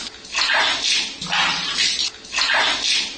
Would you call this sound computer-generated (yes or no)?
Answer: no